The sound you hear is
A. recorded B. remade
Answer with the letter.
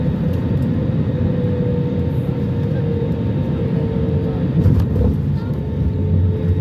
A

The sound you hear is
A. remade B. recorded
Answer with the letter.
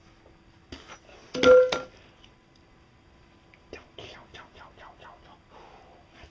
B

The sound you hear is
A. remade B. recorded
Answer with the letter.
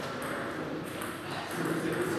B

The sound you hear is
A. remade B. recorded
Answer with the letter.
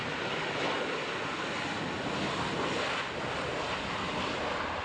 B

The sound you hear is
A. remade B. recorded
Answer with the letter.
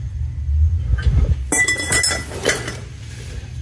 B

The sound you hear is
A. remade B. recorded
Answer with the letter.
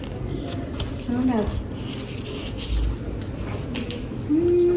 B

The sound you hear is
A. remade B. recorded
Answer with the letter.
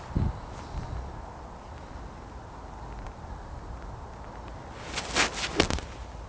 B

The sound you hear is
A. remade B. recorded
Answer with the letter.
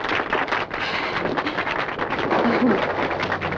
B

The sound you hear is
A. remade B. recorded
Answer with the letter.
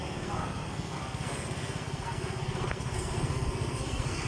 A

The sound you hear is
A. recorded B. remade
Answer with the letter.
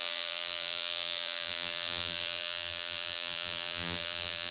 B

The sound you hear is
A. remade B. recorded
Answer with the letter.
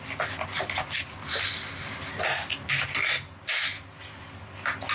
B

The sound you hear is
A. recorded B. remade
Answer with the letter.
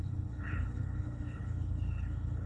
B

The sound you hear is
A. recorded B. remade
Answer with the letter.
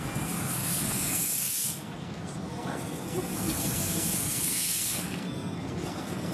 B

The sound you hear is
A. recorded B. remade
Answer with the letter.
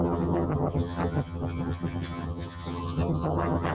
B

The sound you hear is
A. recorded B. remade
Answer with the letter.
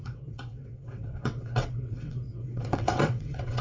B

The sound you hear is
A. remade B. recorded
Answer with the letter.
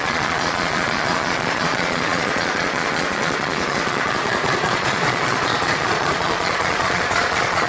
A